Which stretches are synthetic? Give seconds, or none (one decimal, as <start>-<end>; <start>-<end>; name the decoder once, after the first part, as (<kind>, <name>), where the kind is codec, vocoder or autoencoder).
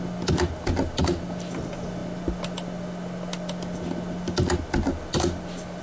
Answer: none